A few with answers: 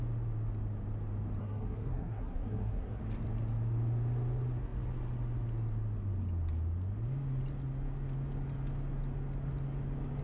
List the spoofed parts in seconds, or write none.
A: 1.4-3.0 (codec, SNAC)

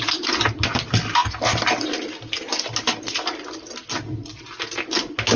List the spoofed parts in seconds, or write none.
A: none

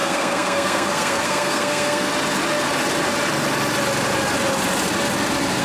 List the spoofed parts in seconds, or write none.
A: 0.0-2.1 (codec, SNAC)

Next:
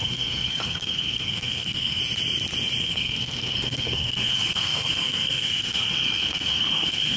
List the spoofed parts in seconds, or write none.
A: 0.0-2.0 (codec, SNAC); 2.8-7.2

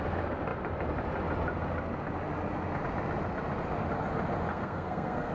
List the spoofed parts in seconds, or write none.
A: 4.5-5.3 (codec, SNAC)

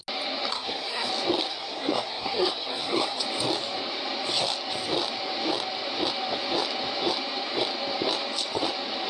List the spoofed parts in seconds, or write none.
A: 0.5-1.1 (codec, SNAC); 1.5-3.2

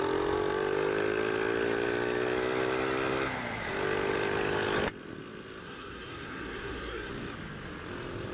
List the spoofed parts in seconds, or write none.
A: 5.6-7.1 (codec, SNAC)